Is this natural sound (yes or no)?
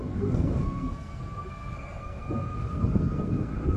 no